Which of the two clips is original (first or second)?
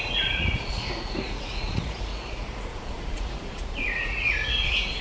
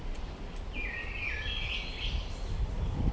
second